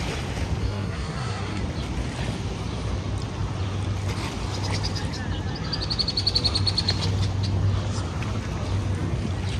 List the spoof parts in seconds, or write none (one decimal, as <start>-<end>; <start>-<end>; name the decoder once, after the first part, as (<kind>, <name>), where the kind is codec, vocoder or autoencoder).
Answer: 0.6-1.6 (codec, SNAC)